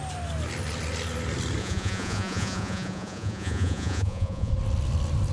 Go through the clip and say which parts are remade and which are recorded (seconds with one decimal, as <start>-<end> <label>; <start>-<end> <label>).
0.0-1.6 recorded; 1.6-4.5 remade; 4.5-5.3 recorded